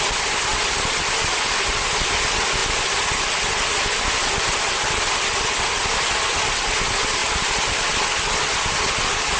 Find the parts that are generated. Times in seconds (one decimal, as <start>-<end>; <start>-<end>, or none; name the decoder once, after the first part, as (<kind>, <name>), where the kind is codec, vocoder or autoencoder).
none